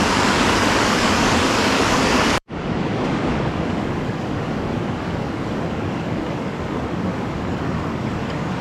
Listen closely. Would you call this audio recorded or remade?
remade